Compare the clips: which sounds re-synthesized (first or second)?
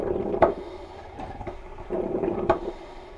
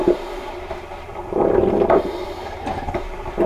first